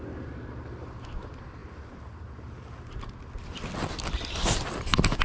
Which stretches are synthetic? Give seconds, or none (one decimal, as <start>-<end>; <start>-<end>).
none